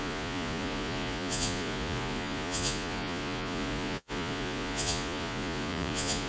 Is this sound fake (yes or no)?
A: yes